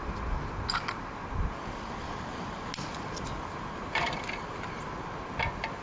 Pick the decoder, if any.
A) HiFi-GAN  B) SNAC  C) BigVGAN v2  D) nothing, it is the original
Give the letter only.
D